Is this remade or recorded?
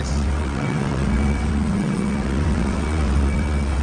remade